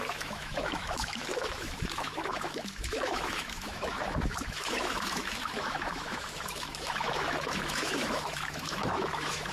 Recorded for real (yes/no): no